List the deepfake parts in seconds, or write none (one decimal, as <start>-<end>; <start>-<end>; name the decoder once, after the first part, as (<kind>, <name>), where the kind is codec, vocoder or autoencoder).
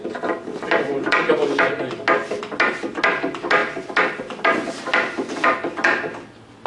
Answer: none